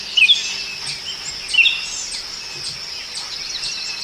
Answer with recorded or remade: recorded